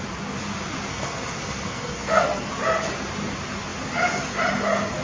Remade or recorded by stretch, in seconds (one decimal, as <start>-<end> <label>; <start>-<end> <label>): 0.0-0.9 recorded; 0.9-2.5 remade; 2.5-5.0 recorded